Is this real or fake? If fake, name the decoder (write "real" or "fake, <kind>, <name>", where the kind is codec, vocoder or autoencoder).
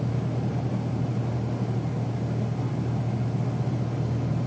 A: real